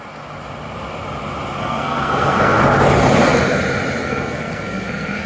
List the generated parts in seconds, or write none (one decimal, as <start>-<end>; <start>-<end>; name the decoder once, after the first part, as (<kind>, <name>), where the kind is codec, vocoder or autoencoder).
1.6-2.6 (codec, SNAC); 4.0-5.3